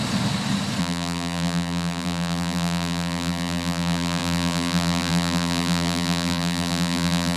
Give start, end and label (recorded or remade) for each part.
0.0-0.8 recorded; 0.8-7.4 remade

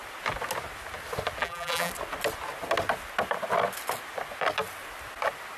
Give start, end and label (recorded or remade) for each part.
0.0-1.4 recorded; 1.4-1.9 remade; 1.9-5.6 recorded